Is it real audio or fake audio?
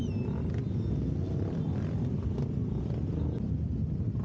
real